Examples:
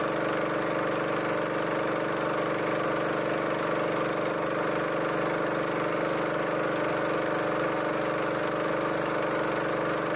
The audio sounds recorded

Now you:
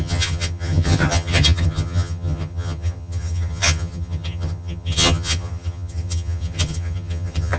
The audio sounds remade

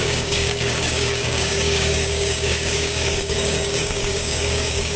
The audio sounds remade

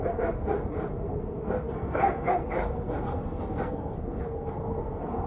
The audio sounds remade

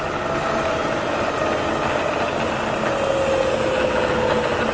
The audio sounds recorded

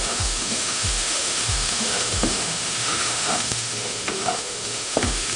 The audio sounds remade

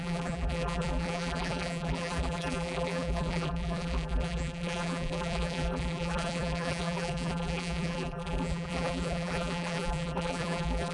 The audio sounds remade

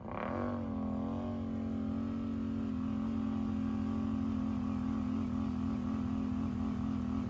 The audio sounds recorded